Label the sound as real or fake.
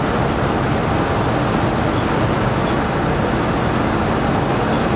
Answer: real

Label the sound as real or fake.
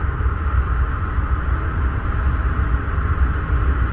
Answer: real